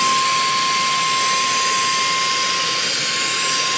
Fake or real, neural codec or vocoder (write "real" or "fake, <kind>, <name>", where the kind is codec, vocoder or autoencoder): real